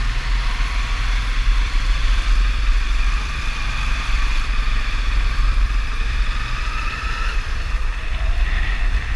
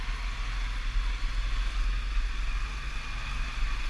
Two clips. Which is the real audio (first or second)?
second